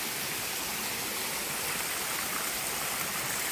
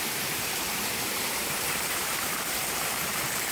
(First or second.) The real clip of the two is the first